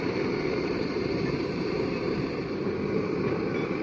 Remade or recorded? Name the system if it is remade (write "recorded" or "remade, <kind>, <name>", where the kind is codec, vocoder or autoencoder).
remade, vocoder, BigVGAN v2